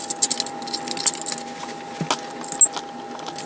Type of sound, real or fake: real